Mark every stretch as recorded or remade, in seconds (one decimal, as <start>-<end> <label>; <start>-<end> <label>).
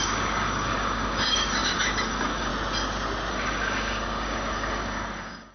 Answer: 0.0-2.5 remade; 2.5-3.3 recorded; 3.3-5.5 remade